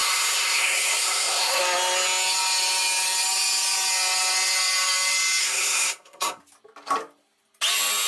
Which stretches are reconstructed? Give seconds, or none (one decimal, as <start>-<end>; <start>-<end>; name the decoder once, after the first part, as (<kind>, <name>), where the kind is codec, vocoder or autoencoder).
0.0-1.6 (codec, SNAC); 5.4-6.4